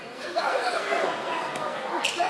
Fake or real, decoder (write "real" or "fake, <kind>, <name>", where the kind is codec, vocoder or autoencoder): fake, codec, SNAC